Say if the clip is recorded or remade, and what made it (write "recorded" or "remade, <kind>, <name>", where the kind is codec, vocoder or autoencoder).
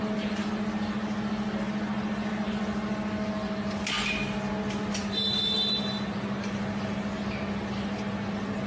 recorded